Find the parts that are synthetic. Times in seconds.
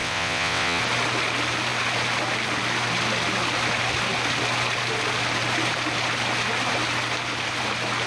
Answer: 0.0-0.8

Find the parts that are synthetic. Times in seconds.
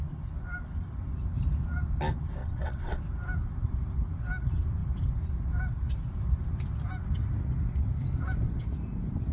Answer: 2.4-3.0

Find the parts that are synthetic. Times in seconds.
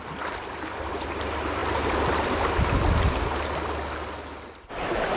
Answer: none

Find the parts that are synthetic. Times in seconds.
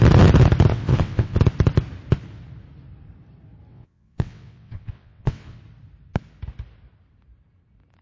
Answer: 0.7-1.4; 3.7-5.6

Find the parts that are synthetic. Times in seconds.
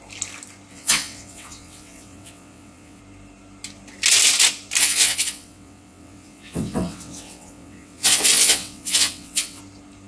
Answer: 0.7-3.0; 4.8-9.6